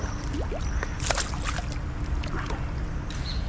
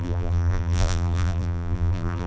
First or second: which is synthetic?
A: second